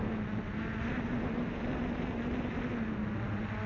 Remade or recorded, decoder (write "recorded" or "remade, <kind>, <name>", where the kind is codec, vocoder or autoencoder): recorded